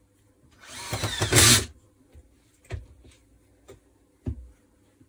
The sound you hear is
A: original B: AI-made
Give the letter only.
A